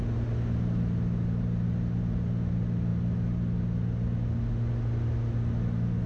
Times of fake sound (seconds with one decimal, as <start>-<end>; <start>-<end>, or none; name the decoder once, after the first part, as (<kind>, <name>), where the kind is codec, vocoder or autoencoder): none